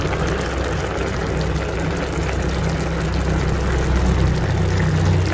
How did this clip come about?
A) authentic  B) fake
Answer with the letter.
A